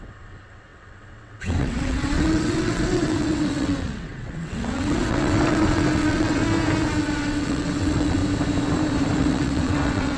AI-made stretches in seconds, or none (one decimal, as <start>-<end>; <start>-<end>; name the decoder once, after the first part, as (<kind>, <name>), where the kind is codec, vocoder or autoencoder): 0.0-6.4 (vocoder, WaveNeXt); 7.0-8.2; 9.2-10.2